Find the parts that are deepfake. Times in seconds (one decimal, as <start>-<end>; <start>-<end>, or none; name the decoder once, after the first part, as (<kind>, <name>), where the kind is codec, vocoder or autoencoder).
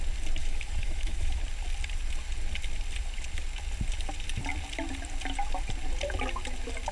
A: 0.4-1.4 (autoencoder, DAC-VAE)